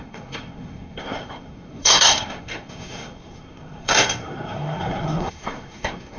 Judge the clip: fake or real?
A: fake